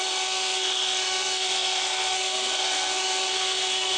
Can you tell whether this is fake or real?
fake